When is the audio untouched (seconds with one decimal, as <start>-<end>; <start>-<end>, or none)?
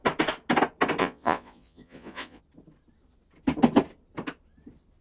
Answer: 0.0-1.0; 2.4-5.0